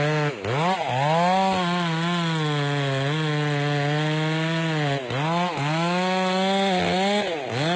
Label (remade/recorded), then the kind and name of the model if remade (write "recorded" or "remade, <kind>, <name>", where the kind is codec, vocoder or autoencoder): recorded